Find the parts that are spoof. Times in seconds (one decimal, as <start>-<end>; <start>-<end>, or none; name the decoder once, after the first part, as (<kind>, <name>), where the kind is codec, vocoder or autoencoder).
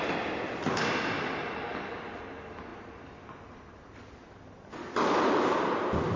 none